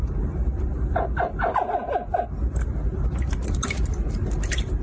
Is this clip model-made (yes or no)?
no